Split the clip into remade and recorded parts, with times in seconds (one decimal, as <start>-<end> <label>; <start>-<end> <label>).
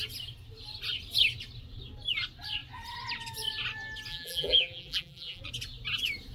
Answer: 0.0-4.1 recorded; 4.1-5.4 remade; 5.4-6.3 recorded